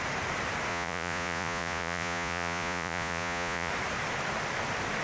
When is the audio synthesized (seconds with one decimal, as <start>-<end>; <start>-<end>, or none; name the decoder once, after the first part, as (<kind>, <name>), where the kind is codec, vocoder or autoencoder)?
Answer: 0.7-3.7 (vocoder, Vocos)